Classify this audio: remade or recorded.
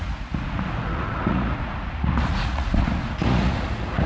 remade